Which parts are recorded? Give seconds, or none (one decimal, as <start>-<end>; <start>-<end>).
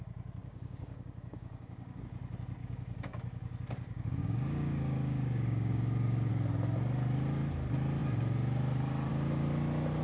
0.0-0.4; 2.0-2.6; 6.3-10.0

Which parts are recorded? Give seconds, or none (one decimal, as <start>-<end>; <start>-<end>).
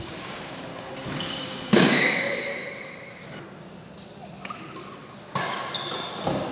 0.7-1.2; 2.5-6.5